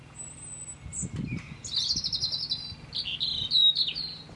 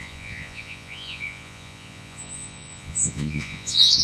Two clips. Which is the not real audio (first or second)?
second